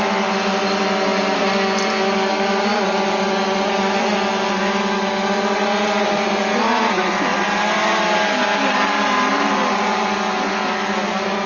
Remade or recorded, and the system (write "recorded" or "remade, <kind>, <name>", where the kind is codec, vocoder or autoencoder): recorded